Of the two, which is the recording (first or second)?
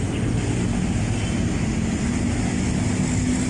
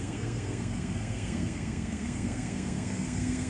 first